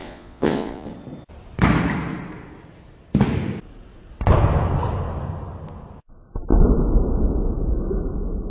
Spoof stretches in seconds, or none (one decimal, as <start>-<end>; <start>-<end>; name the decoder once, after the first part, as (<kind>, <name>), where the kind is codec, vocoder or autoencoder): 0.0-0.9 (vocoder, Vocos)